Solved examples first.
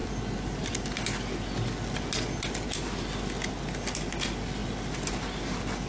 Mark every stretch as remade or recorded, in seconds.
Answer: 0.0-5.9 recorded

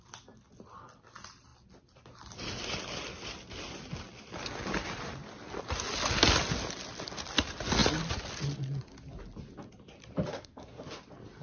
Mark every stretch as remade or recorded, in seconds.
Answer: 0.0-10.3 recorded; 10.3-10.8 remade; 10.8-11.4 recorded

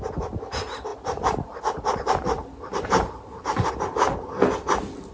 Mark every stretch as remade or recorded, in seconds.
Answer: 0.0-0.9 recorded; 0.9-3.7 remade; 3.7-5.1 recorded

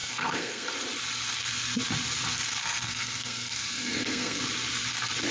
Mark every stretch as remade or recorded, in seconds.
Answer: 0.0-0.7 remade; 0.7-2.6 recorded; 2.6-4.4 remade; 4.4-5.3 recorded

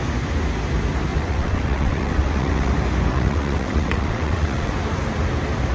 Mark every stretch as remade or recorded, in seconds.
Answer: 0.0-1.1 recorded; 1.1-2.7 remade; 2.7-3.1 recorded; 3.1-4.7 remade; 4.7-5.7 recorded

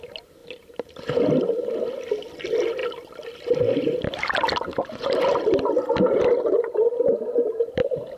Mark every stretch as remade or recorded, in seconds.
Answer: 0.0-8.2 recorded

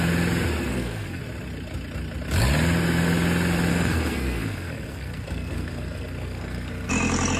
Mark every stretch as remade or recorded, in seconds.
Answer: 0.0-0.7 recorded; 0.7-1.2 remade; 1.2-3.7 recorded; 3.7-6.9 remade; 6.9-7.4 recorded

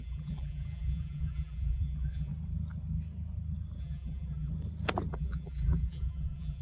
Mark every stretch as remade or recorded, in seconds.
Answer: 0.0-2.3 remade; 2.3-3.8 recorded; 3.8-4.5 remade; 4.5-5.1 recorded; 5.1-6.6 remade